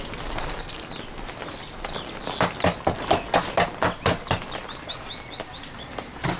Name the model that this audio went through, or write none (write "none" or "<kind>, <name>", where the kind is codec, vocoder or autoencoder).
none